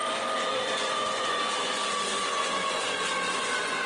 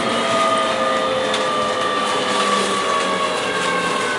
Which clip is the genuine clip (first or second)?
second